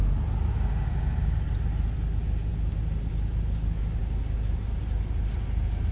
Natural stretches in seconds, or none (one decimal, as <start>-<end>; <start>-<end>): 0.0-5.9